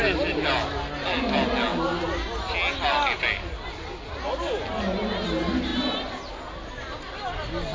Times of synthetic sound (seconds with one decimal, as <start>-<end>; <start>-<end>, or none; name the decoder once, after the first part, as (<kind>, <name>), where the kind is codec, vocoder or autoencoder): 5.7-6.3 (vocoder, BigVGAN v2)